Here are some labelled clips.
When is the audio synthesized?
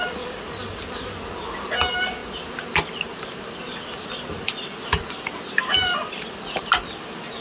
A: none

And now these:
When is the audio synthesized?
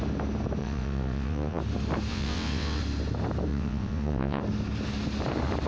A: 0.6-1.6 (vocoder, WaveNeXt); 2.1-2.8; 3.5-4.4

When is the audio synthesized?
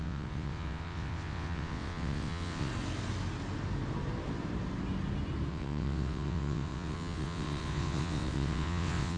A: 0.0-2.7 (vocoder, WaveNeXt); 5.5-9.2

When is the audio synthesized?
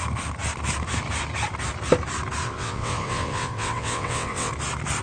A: 2.4-4.5 (vocoder, WaveNeXt)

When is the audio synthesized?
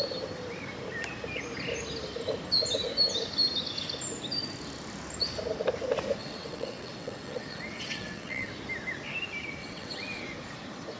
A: 6.2-8.5 (vocoder, WaveNeXt); 9.6-10.2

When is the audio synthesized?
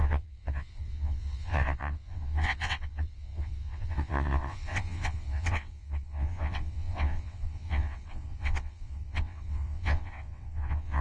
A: 0.0-11.0 (vocoder, WaveNeXt)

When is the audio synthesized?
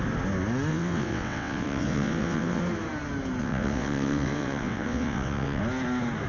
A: 0.7-2.6 (vocoder, WaveNeXt); 3.4-5.6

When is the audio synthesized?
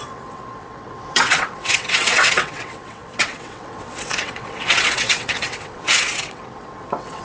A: 0.0-7.2 (vocoder, WaveNeXt)